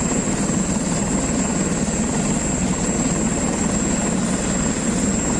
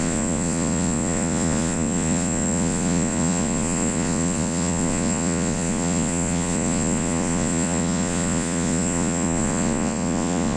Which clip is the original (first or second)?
first